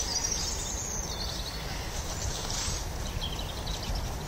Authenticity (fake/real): real